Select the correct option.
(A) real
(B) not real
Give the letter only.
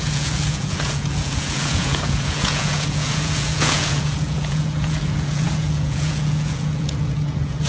B